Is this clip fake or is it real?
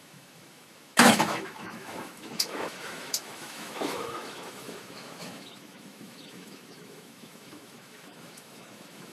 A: fake